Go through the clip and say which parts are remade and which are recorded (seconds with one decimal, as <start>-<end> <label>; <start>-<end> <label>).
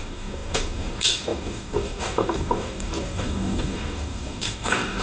0.0-5.0 remade